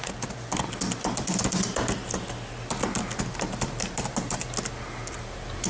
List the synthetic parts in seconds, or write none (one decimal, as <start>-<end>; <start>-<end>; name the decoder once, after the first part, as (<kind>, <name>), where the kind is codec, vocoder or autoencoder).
none